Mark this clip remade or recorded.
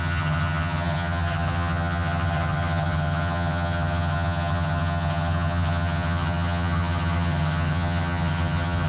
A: remade